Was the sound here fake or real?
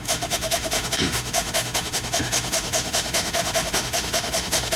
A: fake